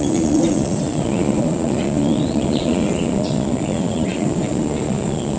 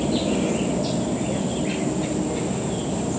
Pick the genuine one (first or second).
second